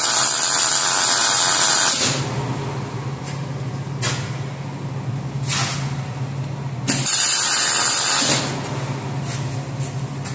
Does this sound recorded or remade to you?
recorded